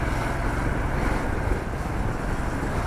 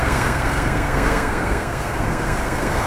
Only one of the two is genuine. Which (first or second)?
first